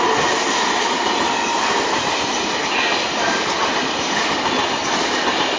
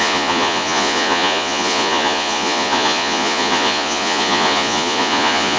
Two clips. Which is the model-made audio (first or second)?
second